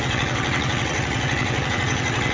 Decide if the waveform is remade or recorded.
remade